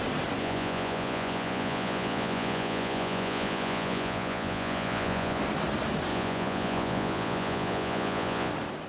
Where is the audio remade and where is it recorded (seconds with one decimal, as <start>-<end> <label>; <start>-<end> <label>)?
0.0-0.4 recorded; 0.4-5.4 remade; 5.4-6.1 recorded; 6.1-8.5 remade; 8.5-8.9 recorded